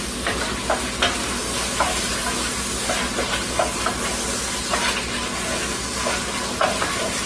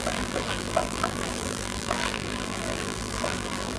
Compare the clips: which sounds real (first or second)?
first